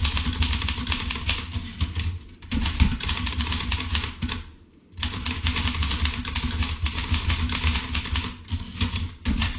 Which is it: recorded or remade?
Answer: recorded